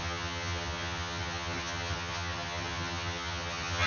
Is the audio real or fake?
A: fake